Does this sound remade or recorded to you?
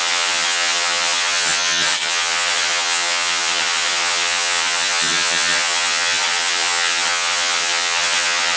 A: remade